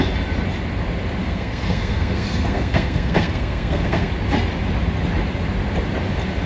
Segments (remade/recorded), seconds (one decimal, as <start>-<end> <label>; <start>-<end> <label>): 0.0-1.2 recorded; 1.2-4.1 remade; 4.1-6.5 recorded